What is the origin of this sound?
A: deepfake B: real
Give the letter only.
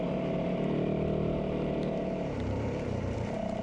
A